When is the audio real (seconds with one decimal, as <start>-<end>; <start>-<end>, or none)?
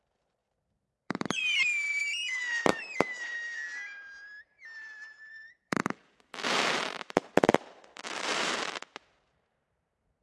3.6-4.9